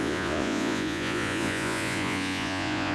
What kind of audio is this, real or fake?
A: fake